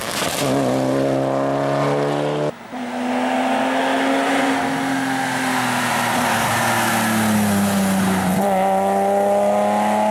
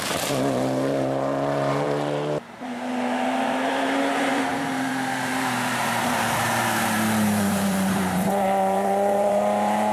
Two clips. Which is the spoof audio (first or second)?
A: second